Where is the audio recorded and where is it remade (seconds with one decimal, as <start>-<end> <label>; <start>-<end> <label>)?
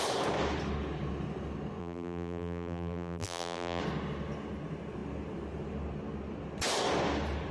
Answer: 0.0-1.8 recorded; 1.8-3.8 remade; 3.8-7.5 recorded